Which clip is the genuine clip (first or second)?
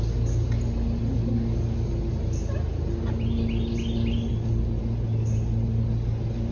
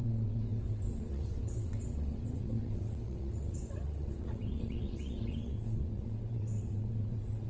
first